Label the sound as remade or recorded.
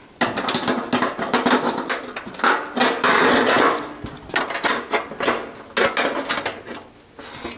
recorded